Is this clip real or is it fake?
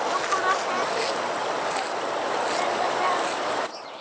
real